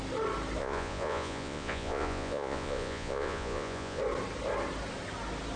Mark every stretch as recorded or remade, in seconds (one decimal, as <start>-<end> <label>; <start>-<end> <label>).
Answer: 0.0-0.6 recorded; 0.6-4.0 remade; 4.0-5.6 recorded